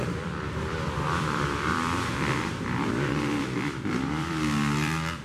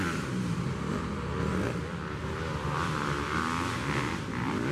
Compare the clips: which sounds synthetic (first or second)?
first